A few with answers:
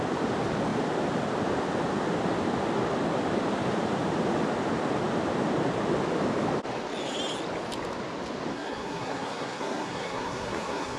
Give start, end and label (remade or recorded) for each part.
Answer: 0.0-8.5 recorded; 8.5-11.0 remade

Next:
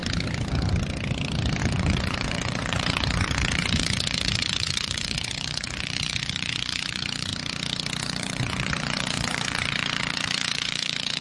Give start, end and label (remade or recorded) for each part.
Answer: 0.0-1.6 recorded; 1.6-7.3 remade; 7.3-8.0 recorded; 8.0-11.2 remade

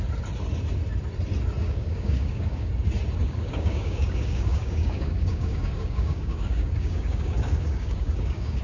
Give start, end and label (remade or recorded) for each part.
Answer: 0.0-1.6 recorded; 1.6-2.7 remade; 2.7-3.2 recorded; 3.2-8.6 remade